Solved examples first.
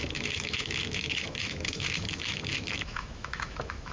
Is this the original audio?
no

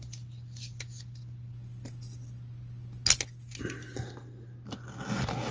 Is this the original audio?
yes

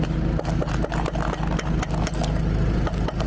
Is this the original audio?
yes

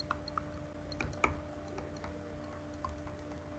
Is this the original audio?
yes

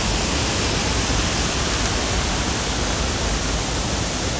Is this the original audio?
yes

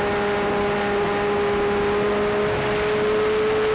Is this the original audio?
yes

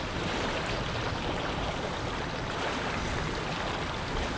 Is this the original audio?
yes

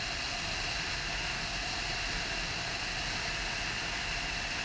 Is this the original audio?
yes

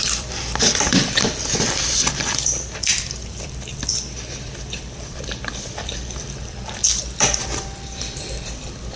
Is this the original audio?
no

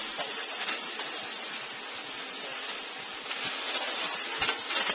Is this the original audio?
yes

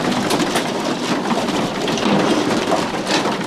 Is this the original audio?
yes